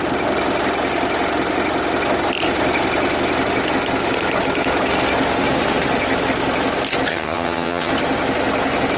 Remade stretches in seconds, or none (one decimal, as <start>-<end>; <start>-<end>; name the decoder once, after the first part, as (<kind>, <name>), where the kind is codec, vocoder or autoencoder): 7.1-7.9 (vocoder, HiFi-GAN)